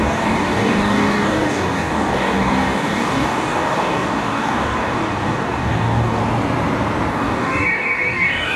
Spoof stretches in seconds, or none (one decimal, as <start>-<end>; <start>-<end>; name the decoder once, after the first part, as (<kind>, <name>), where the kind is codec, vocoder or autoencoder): 0.0-6.2 (codec, DAC); 7.1-8.6